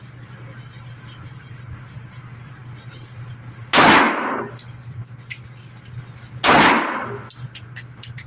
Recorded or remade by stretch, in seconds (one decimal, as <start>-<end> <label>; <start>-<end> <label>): 0.0-8.3 recorded